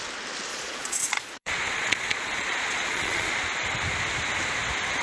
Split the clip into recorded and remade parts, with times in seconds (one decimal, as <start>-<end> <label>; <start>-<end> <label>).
0.0-0.5 recorded; 0.5-3.3 remade; 3.3-5.0 recorded